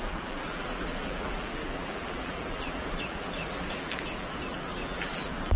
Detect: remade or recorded remade